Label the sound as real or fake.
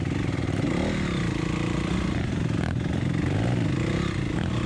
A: real